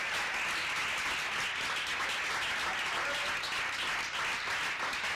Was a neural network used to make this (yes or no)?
no